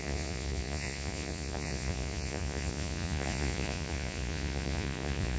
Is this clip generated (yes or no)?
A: yes